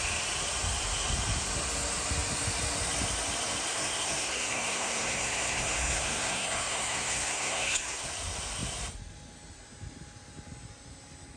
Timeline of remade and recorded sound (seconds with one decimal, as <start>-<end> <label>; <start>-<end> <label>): 0.0-3.7 recorded; 3.7-8.1 remade; 8.1-11.4 recorded